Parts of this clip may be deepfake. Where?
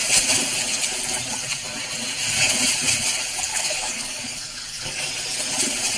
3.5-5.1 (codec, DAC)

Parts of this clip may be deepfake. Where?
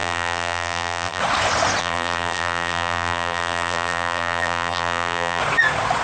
0.0-1.2 (vocoder, BigVGAN v2); 1.8-5.4